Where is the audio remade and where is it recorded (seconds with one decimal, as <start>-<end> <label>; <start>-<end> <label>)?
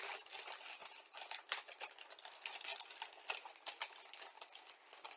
0.0-5.2 recorded